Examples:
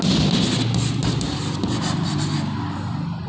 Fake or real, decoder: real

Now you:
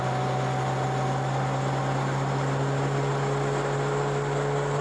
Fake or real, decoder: real